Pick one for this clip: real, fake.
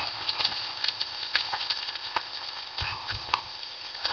fake